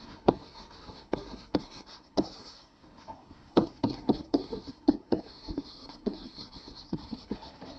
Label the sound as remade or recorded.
remade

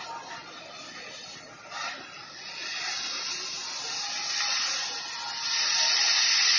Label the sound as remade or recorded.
recorded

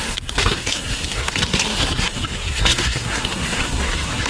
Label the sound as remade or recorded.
remade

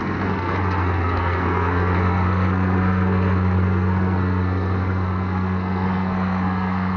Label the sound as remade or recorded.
remade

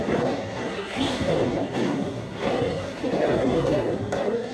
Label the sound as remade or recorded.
remade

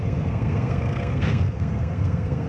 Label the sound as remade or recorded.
remade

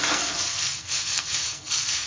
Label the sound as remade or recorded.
remade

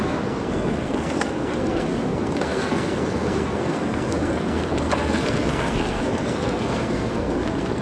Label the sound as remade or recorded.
remade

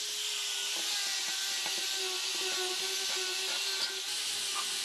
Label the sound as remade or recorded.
recorded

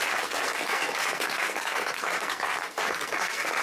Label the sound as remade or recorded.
remade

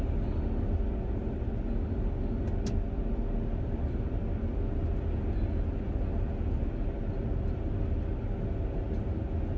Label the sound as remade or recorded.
recorded